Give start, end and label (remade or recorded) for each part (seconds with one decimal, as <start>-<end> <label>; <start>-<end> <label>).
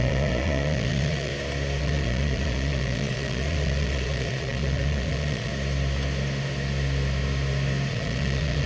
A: 0.0-1.3 remade; 1.3-1.8 recorded; 1.8-5.5 remade; 5.5-7.9 recorded; 7.9-8.7 remade